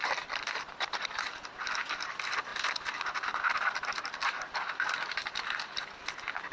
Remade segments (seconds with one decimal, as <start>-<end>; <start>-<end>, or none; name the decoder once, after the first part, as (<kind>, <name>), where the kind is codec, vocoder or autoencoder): none